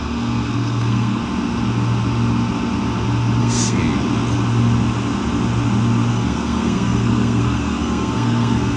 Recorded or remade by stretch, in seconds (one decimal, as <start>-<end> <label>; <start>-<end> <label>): 0.0-1.2 remade; 1.2-3.4 recorded; 3.4-3.8 remade; 3.8-6.1 recorded; 6.1-8.8 remade